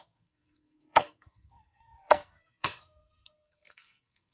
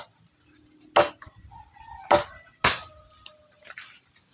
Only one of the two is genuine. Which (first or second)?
second